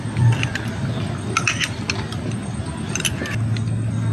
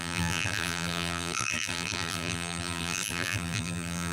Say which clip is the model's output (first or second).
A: second